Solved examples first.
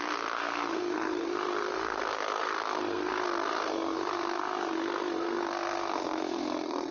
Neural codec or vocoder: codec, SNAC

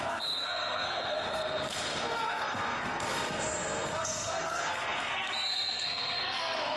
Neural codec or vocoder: codec, SNAC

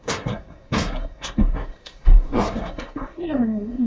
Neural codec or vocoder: codec, SNAC